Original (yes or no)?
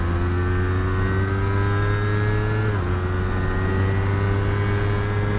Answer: yes